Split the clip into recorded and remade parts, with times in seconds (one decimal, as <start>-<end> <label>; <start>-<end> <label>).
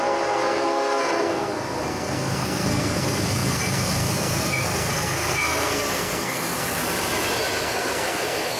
0.0-6.8 remade; 6.8-7.6 recorded; 7.6-8.6 remade